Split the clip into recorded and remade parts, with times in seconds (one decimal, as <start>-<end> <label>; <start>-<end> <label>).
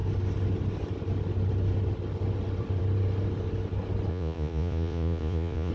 0.0-4.1 recorded; 4.1-5.7 remade